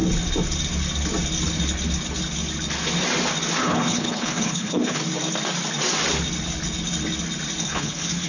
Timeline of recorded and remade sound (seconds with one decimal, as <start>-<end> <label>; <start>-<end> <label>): 0.0-3.6 recorded; 3.6-5.0 remade; 5.0-7.6 recorded; 7.6-8.3 remade

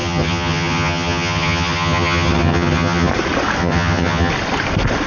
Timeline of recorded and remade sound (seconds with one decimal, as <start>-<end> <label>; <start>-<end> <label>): 0.0-3.1 remade; 3.1-3.6 recorded; 3.6-4.3 remade; 4.3-5.1 recorded

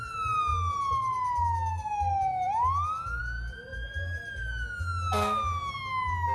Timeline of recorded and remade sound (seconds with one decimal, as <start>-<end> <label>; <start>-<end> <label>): 0.0-6.3 recorded

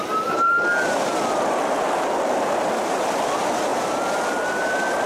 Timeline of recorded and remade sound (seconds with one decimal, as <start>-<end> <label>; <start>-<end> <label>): 0.0-5.1 remade

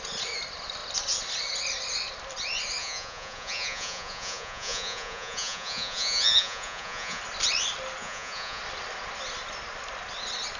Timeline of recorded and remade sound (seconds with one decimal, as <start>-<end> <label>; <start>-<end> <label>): 0.0-2.8 recorded; 2.8-7.2 remade; 7.2-8.0 recorded; 8.0-8.6 remade; 8.6-10.6 recorded

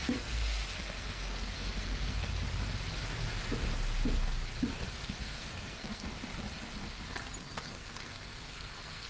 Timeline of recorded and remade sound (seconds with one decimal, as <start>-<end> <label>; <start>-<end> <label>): 0.0-2.3 remade; 2.3-4.7 recorded; 4.7-6.1 remade; 6.1-7.4 recorded; 7.4-9.1 remade

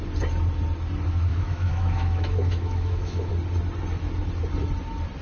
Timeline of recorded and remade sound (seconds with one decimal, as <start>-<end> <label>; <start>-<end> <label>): 0.0-1.3 recorded; 1.3-3.3 remade; 3.3-5.2 recorded